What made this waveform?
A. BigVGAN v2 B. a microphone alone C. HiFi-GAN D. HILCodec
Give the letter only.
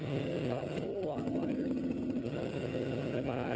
C